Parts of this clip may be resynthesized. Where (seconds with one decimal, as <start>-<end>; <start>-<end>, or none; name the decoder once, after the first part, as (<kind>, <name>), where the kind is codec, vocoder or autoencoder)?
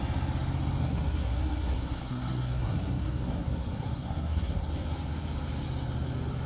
0.8-4.7 (codec, SNAC)